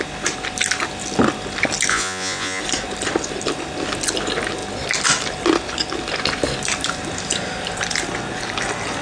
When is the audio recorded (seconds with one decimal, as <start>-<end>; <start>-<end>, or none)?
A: 0.0-1.9; 2.6-9.0